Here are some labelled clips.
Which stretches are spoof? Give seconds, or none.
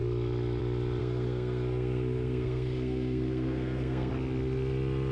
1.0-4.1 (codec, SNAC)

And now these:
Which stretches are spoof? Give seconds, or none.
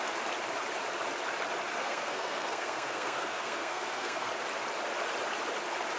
1.7-4.3 (codec, SNAC)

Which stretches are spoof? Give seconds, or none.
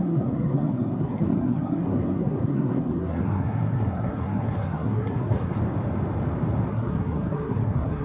0.0-5.6 (codec, SNAC); 6.7-8.0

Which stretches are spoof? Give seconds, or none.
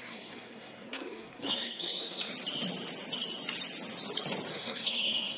0.0-2.3 (codec, SNAC); 4.5-5.4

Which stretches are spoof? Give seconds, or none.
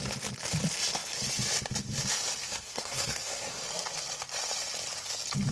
2.5-3.6 (codec, SNAC)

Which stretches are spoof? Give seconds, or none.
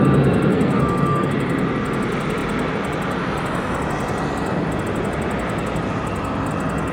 0.5-1.3 (codec, SNAC)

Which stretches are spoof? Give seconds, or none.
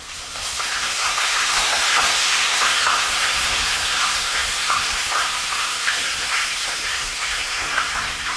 0.0-8.4 (codec, SNAC)